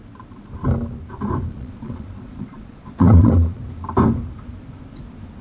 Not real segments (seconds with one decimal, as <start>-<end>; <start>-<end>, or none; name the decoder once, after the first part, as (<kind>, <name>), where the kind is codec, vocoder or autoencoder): 1.5-3.6 (vocoder, Vocos)